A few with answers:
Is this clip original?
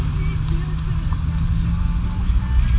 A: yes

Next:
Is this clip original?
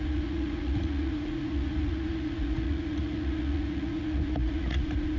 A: no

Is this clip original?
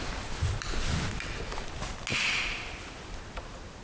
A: yes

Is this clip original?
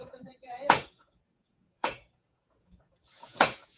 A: no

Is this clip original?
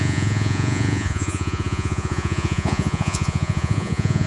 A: no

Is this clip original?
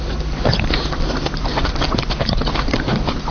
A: yes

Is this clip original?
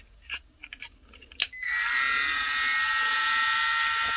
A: yes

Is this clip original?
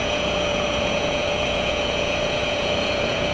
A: no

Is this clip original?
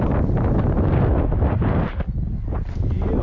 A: yes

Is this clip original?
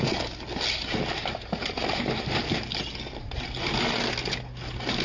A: yes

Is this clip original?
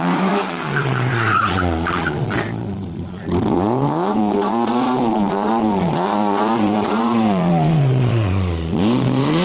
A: no